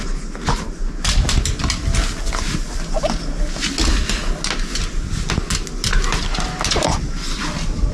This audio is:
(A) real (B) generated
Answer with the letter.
A